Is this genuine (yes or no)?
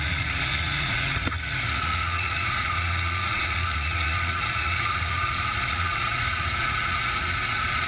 no